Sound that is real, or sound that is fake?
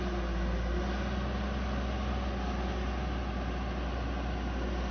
real